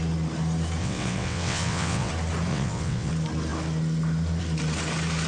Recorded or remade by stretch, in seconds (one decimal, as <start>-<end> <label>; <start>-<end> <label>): 0.0-0.8 recorded; 0.8-2.1 remade; 2.1-2.5 recorded; 2.5-3.1 remade; 3.1-5.3 recorded